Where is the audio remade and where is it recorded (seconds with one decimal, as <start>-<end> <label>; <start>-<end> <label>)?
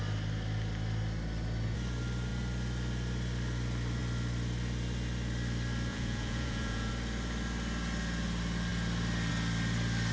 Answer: 0.0-5.9 recorded; 5.9-6.9 remade; 6.9-10.1 recorded